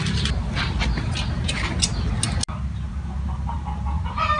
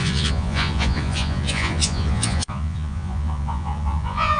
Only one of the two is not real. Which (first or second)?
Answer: second